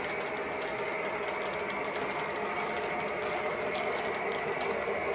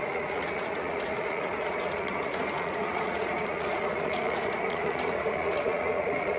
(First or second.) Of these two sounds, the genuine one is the first